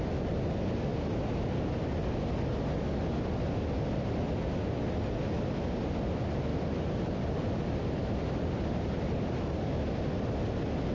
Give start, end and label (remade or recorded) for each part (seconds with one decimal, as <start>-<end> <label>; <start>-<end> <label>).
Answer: 0.0-1.9 recorded; 1.9-2.5 remade; 2.5-6.5 recorded; 6.5-9.0 remade; 9.0-10.9 recorded